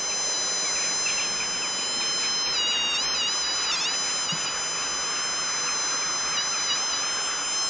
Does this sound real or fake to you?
real